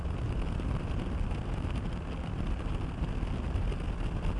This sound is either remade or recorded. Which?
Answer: recorded